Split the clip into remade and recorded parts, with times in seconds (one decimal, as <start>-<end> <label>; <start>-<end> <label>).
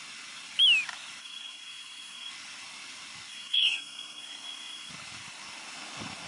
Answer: 0.0-1.2 recorded; 1.2-2.3 remade; 2.3-3.3 recorded; 3.3-4.9 remade; 4.9-6.3 recorded